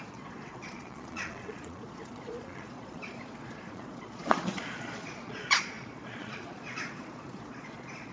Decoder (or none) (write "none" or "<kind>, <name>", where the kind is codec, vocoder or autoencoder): vocoder, Vocos